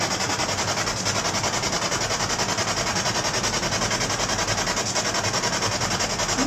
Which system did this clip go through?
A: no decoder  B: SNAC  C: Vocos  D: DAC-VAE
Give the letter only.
A